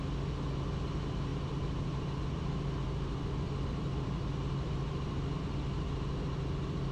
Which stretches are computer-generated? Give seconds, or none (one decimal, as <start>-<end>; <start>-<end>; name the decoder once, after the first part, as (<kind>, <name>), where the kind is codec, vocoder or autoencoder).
1.3-5.4 (vocoder, BigVGAN v2)